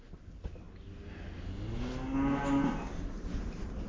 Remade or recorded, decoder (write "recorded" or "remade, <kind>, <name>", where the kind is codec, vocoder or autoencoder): recorded